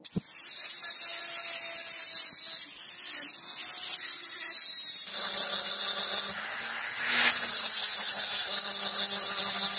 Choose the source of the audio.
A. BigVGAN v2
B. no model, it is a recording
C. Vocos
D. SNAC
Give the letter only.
B